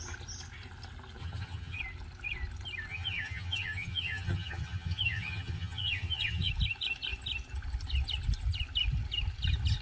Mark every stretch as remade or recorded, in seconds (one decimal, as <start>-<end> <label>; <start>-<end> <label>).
0.0-1.2 recorded; 1.2-1.8 remade; 1.8-2.9 recorded; 2.9-6.5 remade; 6.5-9.8 recorded